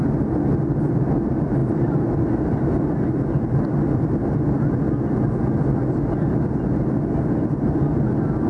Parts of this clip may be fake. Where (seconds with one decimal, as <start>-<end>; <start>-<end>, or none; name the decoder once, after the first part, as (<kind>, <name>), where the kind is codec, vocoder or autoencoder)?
none